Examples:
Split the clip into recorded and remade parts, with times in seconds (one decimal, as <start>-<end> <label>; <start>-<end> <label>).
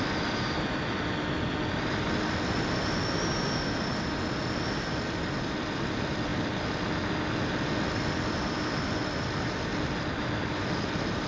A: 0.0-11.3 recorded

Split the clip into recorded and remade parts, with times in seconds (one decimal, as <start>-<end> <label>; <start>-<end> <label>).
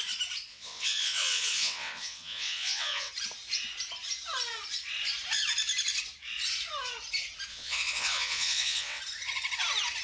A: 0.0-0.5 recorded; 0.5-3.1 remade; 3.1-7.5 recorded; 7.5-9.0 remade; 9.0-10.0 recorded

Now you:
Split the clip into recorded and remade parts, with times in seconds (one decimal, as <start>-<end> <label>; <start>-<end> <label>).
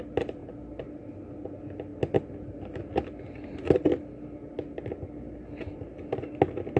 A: 0.0-6.8 recorded